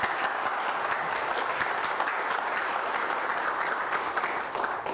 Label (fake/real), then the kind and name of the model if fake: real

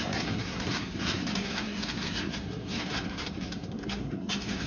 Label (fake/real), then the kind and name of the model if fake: fake, codec, SNAC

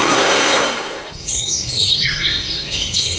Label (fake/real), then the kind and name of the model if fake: fake, codec, SNAC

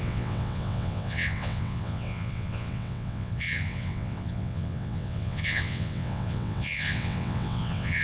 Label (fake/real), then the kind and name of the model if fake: fake, vocoder, WaveNeXt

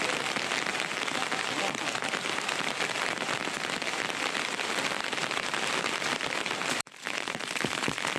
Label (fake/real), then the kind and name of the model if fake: real